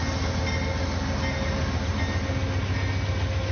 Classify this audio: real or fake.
real